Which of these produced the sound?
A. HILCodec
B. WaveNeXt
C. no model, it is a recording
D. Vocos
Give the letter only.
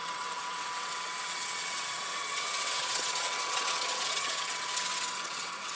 B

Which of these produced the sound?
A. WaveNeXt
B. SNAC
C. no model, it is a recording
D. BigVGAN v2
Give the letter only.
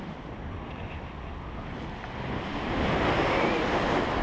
C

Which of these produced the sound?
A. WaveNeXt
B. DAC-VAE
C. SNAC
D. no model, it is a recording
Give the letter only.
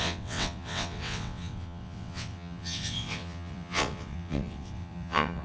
A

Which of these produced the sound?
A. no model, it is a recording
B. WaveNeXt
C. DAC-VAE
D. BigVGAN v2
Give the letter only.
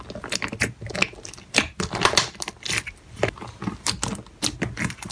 A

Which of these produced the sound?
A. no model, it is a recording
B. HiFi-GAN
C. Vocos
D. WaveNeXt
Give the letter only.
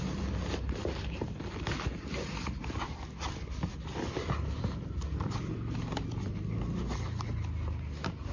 A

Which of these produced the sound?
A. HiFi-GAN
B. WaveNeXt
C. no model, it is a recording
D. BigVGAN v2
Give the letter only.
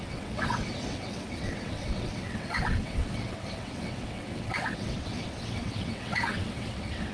B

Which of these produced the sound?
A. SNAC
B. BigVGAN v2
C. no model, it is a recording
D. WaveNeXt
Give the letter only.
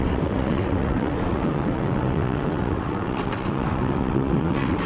D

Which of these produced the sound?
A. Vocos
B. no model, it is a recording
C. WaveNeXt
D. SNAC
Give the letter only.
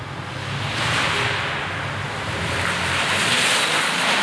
B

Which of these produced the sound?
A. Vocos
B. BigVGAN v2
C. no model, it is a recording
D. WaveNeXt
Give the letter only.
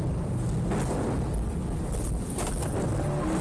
C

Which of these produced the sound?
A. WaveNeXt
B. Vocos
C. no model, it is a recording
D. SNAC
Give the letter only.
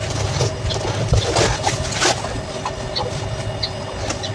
C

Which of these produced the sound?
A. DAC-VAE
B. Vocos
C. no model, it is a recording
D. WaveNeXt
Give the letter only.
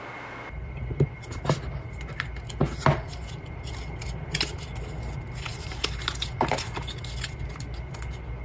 C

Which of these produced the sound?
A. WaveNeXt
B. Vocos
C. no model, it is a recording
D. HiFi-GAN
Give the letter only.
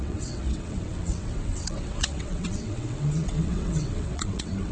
A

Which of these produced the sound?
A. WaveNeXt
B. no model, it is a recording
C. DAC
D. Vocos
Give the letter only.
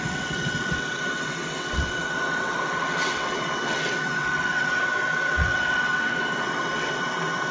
A